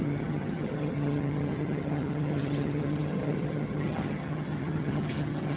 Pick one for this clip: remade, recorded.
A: remade